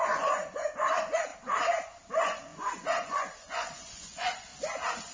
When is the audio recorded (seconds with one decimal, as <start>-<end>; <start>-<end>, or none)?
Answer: 1.3-2.1; 4.5-5.1